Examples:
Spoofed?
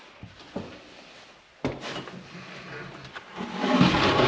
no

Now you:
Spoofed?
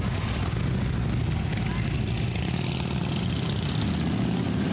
no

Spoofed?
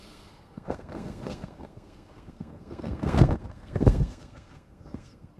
yes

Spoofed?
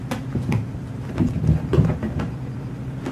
no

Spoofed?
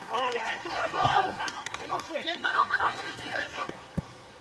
yes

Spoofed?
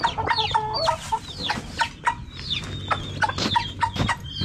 no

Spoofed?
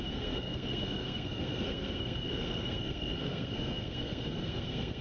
yes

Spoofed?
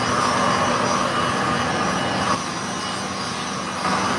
no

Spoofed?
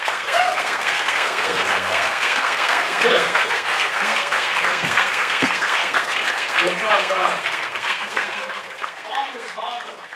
yes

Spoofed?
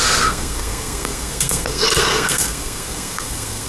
yes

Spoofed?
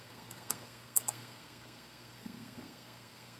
yes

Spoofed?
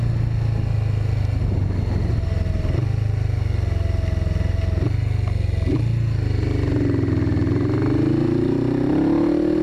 no